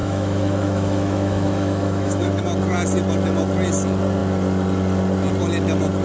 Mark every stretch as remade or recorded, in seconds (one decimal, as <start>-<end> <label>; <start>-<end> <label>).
0.0-2.4 remade; 2.4-6.0 recorded